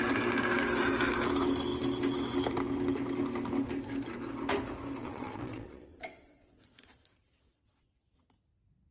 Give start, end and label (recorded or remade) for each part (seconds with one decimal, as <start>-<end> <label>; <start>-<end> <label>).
0.0-5.0 recorded; 5.0-8.3 remade; 8.3-8.9 recorded